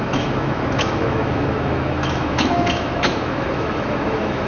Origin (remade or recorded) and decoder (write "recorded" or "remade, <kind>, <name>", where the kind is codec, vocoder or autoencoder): remade, autoencoder, DAC-VAE